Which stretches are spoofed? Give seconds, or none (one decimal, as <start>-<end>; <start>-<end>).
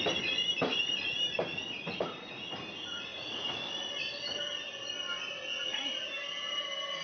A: 3.1-3.6